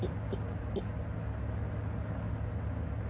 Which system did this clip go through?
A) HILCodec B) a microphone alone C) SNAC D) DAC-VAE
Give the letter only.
B